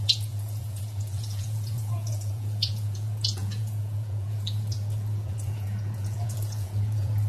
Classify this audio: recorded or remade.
remade